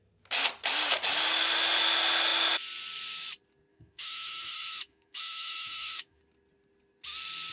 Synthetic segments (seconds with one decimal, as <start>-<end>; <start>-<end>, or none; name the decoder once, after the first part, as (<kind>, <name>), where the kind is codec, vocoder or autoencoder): 3.7-6.2 (autoencoder, DAC-VAE)